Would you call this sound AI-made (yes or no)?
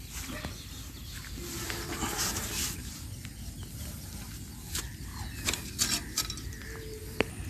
no